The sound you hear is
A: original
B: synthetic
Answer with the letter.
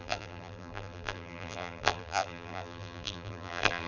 B